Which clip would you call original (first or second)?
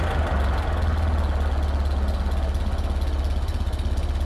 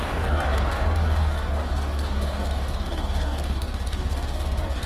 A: first